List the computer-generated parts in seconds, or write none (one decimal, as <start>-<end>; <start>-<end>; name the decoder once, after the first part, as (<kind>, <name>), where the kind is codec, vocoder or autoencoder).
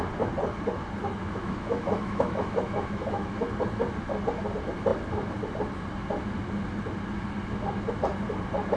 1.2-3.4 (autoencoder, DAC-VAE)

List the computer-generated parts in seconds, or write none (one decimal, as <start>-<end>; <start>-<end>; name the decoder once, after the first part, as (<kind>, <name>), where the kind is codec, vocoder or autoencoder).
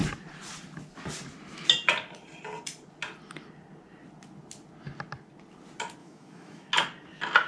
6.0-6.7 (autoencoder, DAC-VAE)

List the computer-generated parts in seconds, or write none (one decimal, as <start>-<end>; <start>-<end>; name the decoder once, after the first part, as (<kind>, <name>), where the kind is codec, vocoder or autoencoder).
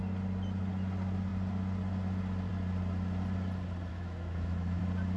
3.9-4.8 (autoencoder, DAC-VAE)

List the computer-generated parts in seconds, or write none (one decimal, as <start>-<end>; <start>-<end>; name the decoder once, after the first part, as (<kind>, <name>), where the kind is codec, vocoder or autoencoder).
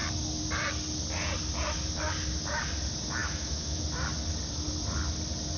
3.2-3.8 (autoencoder, DAC-VAE)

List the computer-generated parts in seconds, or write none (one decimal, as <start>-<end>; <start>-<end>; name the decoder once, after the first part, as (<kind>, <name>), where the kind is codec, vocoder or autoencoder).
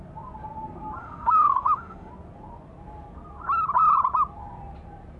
1.0-2.1 (autoencoder, DAC-VAE)